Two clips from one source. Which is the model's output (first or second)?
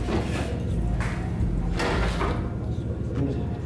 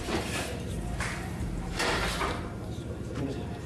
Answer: second